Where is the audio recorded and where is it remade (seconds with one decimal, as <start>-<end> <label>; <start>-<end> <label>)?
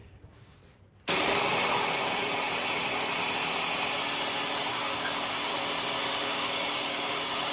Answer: 0.0-0.6 remade; 0.6-4.7 recorded; 4.7-5.5 remade; 5.5-6.1 recorded; 6.1-7.5 remade